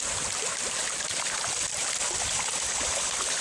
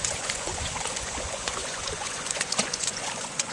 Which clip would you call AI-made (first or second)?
second